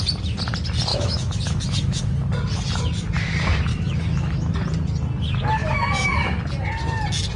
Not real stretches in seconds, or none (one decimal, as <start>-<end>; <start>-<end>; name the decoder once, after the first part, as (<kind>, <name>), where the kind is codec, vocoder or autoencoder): 0.9-2.0 (autoencoder, DAC-VAE); 3.7-4.5; 5.6-6.4